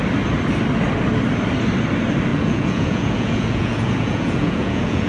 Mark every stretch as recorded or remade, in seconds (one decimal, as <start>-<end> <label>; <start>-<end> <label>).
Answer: 0.0-2.3 recorded; 2.3-5.1 remade